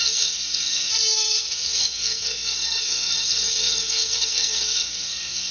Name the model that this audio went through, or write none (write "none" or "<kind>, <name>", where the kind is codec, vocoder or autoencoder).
codec, SNAC